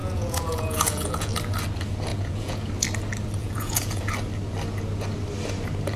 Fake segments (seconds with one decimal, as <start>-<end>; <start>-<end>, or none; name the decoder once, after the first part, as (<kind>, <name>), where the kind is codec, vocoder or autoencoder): 0.0-1.3 (vocoder, Vocos); 2.1-2.7; 3.4-4.1